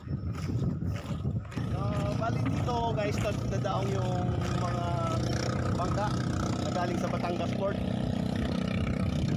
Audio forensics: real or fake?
real